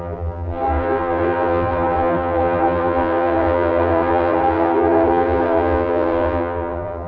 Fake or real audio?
fake